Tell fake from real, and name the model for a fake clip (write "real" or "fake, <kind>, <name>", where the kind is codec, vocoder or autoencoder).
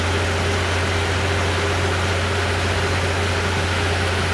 real